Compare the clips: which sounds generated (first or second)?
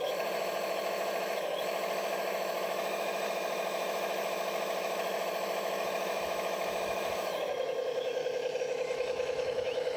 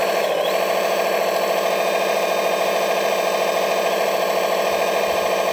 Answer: first